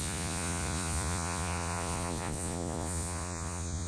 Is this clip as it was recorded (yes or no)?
no